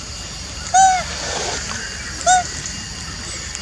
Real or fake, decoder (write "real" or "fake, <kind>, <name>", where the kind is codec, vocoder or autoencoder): real